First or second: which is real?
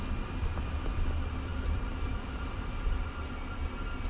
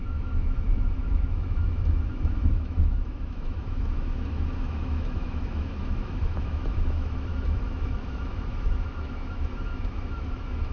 first